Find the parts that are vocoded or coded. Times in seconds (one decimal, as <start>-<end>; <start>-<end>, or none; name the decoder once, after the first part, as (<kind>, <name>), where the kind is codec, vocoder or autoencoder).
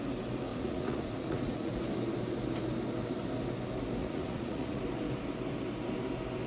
0.5-1.8 (vocoder, Vocos); 4.0-4.8